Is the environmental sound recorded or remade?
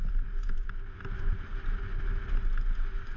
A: recorded